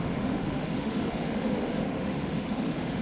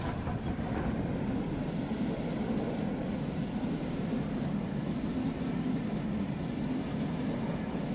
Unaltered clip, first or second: second